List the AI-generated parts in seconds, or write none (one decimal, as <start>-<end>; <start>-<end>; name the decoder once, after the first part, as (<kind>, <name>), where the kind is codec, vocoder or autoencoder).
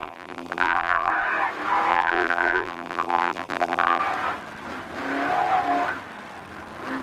0.0-1.1 (vocoder, BigVGAN v2); 1.9-4.0